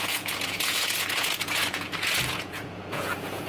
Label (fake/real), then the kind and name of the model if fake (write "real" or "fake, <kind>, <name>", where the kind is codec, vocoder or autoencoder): fake, vocoder, Vocos